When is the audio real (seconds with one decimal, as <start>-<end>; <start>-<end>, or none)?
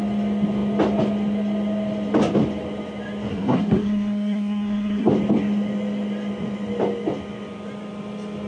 0.0-3.3; 5.1-8.5